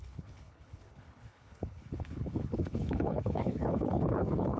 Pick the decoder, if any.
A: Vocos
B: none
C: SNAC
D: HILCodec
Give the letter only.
D